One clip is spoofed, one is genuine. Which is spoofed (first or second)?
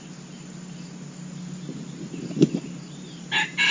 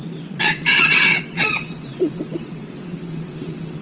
second